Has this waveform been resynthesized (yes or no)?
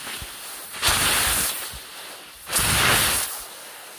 no